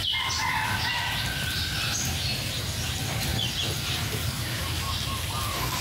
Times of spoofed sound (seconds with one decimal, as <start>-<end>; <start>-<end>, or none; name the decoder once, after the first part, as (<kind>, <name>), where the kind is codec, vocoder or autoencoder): none

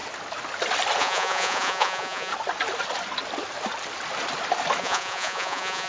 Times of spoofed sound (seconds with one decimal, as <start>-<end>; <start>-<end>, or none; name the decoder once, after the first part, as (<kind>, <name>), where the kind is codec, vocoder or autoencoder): 1.0-2.3 (vocoder, Vocos); 4.8-5.9

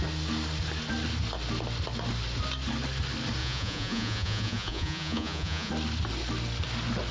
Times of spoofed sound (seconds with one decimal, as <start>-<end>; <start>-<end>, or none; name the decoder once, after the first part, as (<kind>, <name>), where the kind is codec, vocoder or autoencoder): 3.4-5.7 (vocoder, Vocos)

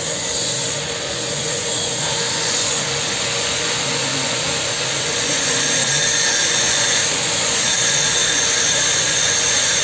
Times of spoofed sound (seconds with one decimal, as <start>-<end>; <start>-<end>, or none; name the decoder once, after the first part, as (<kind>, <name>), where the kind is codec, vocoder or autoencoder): 0.0-9.8 (vocoder, Vocos)